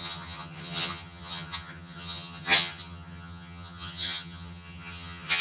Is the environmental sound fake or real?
fake